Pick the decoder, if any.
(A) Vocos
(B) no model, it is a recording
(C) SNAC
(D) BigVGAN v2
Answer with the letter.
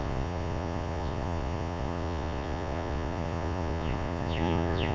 A